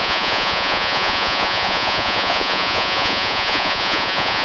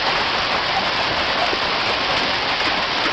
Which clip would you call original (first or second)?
second